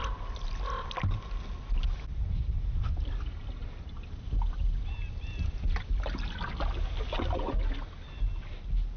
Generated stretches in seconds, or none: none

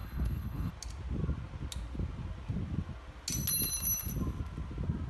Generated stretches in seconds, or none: 0.0-0.7 (codec, HILCodec)